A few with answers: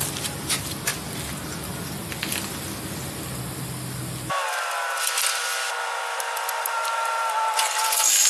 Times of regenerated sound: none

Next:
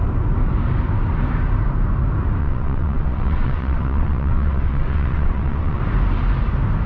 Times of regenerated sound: 2.4-5.8 (vocoder, WaveNeXt)